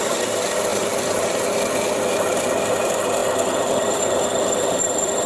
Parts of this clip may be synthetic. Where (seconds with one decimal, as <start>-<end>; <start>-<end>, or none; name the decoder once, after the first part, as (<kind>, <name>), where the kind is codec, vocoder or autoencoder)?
none